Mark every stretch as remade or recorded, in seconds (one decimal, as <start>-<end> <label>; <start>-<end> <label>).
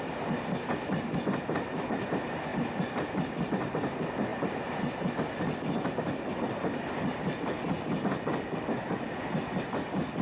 0.0-4.3 recorded; 4.3-5.1 remade; 5.1-10.2 recorded